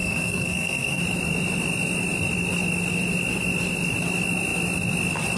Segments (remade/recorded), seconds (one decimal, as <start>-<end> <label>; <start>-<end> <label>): 0.0-1.0 remade; 1.0-5.4 recorded